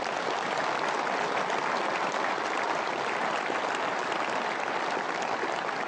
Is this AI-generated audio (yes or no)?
no